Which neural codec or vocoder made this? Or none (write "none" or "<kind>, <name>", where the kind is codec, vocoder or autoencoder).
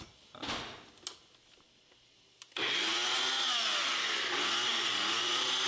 none